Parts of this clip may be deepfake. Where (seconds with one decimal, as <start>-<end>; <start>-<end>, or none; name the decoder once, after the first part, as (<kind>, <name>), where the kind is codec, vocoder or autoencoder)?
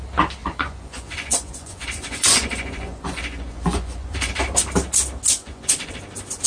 0.4-4.3 (vocoder, Vocos); 5.4-5.9